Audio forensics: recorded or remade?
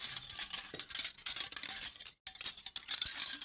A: recorded